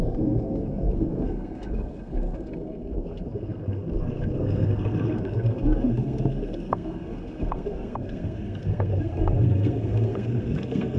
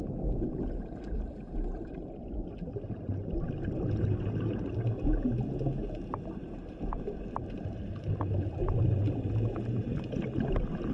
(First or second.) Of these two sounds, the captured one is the second